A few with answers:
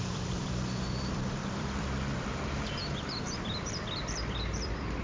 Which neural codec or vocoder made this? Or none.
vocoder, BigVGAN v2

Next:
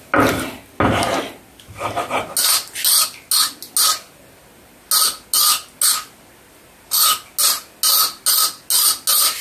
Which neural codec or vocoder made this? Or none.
none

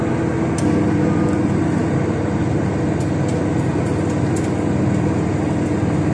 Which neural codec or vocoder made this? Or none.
none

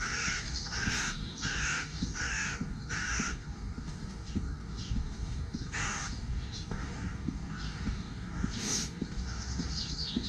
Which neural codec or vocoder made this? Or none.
codec, DAC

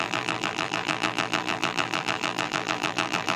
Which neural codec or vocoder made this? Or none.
vocoder, BigVGAN v2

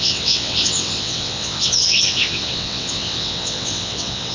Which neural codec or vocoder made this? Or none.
vocoder, WaveNeXt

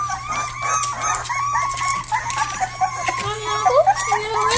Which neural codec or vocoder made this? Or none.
none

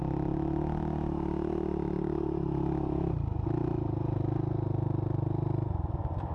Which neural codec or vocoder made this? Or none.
none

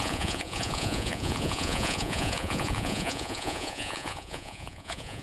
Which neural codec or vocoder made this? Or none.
vocoder, Vocos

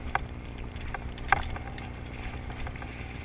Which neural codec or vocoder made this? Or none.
none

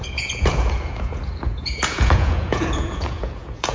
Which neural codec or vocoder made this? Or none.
vocoder, Vocos